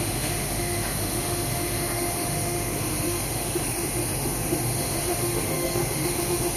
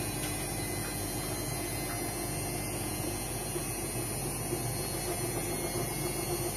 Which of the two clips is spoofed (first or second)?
first